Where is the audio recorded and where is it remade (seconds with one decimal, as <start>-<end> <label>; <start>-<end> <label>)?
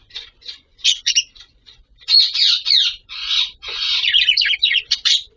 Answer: 0.0-5.4 remade